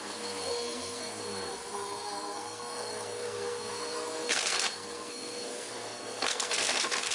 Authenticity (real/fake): fake